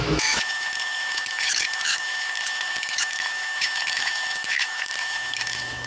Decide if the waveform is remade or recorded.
remade